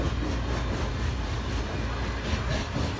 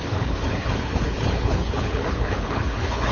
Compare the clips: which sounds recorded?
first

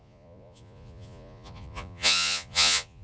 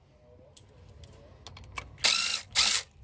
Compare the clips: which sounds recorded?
second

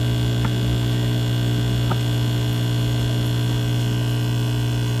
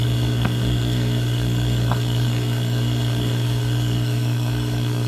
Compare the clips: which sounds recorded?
first